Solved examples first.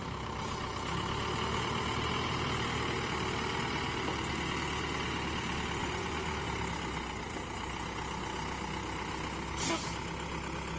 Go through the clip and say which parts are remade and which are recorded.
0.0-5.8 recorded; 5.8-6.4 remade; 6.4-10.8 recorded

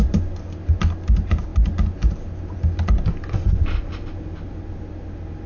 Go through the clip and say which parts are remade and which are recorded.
0.0-5.5 recorded

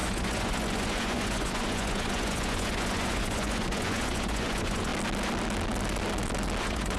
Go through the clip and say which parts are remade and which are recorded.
0.0-4.9 remade; 4.9-6.6 recorded; 6.6-7.0 remade